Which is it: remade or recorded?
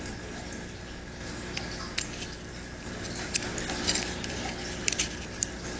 recorded